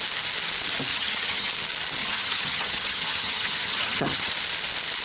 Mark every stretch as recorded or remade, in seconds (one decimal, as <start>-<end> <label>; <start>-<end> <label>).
0.0-0.9 recorded; 0.9-1.5 remade; 1.5-2.0 recorded; 2.0-4.3 remade; 4.3-5.0 recorded